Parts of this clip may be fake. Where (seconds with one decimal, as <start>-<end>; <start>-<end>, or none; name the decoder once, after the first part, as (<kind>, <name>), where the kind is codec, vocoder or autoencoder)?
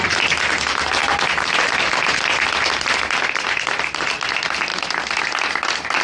none